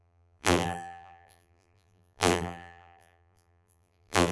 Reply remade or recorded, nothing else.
remade